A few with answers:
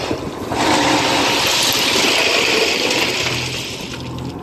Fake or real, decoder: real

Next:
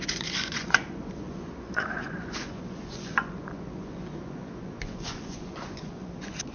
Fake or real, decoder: fake, vocoder, Vocos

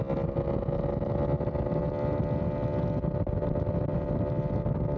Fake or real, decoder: real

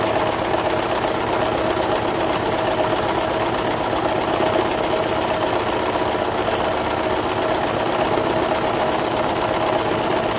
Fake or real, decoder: real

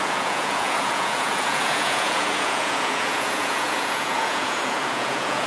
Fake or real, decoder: fake, vocoder, Vocos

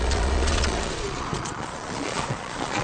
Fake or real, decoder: fake, vocoder, Vocos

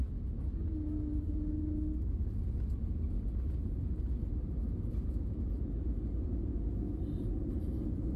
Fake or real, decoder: real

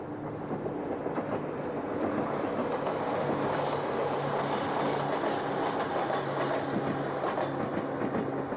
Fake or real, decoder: real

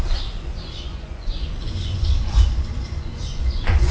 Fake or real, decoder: fake, vocoder, Vocos